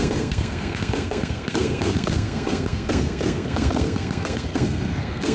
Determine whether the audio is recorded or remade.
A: remade